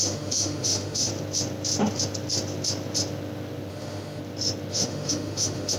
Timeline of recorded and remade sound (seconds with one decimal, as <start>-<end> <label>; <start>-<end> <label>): 0.0-1.1 remade; 1.1-3.7 recorded; 3.7-4.2 remade; 4.2-4.7 recorded; 4.7-5.8 remade